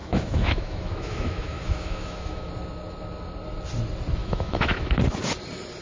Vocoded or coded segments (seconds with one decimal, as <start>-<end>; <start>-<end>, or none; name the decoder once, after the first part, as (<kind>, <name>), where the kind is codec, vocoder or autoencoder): 0.0-2.5 (autoencoder, DAC-VAE); 4.2-4.9